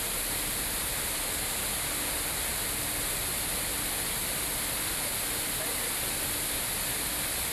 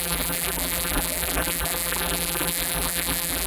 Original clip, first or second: first